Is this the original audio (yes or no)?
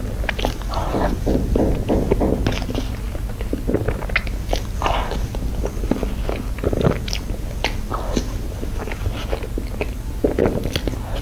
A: yes